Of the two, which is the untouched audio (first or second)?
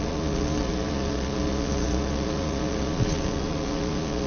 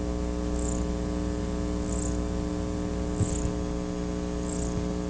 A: second